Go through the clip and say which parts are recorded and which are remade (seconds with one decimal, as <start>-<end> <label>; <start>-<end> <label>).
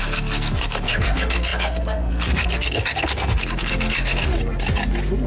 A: 0.0-4.3 remade; 4.3-5.3 recorded